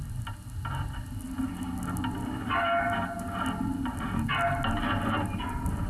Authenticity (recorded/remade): recorded